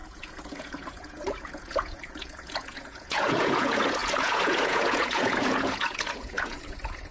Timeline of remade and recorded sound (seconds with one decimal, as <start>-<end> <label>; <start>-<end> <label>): 0.0-7.1 remade